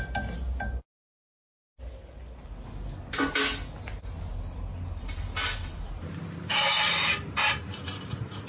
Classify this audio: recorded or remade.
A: recorded